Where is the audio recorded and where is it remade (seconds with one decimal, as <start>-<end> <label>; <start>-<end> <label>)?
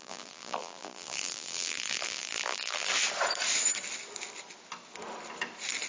0.0-2.9 remade; 2.9-5.9 recorded